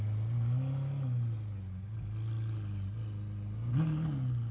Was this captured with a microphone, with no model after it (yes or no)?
yes